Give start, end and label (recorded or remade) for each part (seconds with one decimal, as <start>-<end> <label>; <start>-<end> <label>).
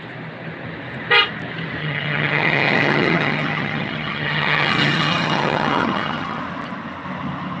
0.0-1.8 recorded; 1.8-6.4 remade; 6.4-7.6 recorded